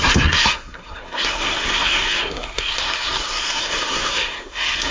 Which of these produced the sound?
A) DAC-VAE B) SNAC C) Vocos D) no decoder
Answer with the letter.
B